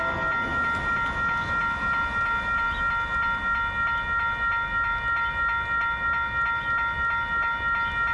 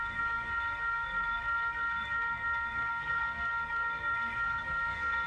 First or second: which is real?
first